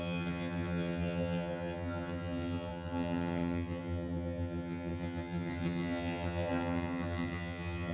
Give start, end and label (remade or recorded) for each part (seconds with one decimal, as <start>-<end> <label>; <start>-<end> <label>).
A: 0.0-7.9 remade